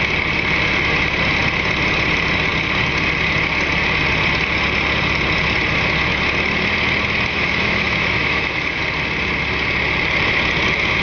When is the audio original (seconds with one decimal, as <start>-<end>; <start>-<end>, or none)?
0.0-7.3; 8.8-11.0